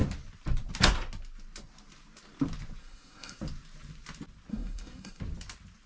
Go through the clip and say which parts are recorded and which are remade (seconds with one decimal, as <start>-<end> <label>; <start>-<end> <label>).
0.0-2.8 recorded; 2.8-3.4 remade; 3.4-4.5 recorded; 4.5-5.2 remade; 5.2-5.9 recorded